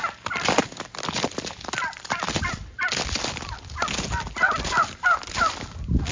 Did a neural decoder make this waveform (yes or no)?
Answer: no